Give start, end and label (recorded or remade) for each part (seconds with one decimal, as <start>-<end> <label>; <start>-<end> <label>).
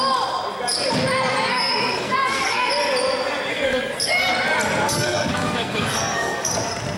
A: 0.0-1.5 recorded; 1.5-2.7 remade; 2.7-3.5 recorded; 3.5-4.1 remade; 4.1-4.9 recorded; 4.9-6.5 remade; 6.5-7.0 recorded